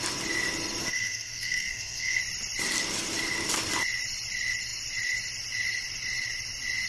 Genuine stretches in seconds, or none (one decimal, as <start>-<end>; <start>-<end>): 0.0-0.8; 2.2-6.9